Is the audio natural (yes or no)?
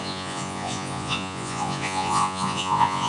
no